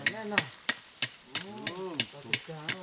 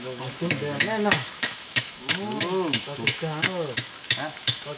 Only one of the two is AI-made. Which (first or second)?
second